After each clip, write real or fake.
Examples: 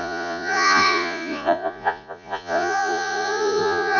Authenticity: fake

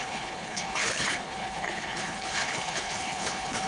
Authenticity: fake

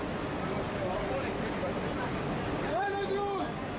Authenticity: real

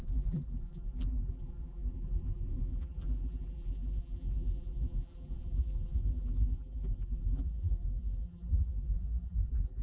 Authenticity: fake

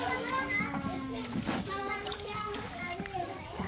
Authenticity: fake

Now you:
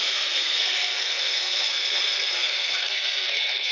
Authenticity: fake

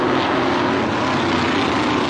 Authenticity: real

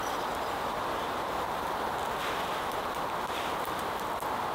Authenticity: real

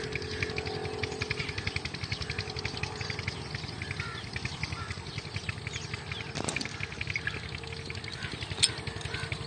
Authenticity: real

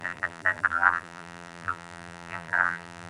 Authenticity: fake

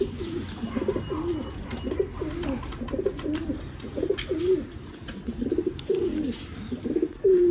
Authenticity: real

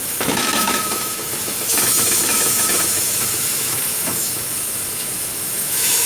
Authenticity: fake